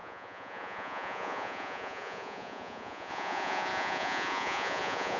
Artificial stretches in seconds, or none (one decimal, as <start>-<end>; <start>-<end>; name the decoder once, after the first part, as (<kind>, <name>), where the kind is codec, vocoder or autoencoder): 0.0-5.2 (vocoder, Vocos)